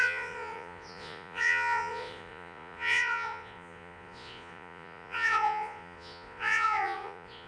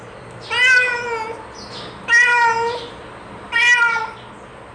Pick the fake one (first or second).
first